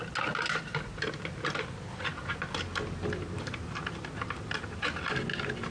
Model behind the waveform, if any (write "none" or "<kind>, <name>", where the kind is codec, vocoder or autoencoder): none